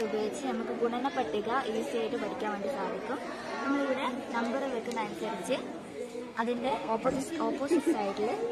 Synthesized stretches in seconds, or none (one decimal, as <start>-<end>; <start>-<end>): 5.8-7.1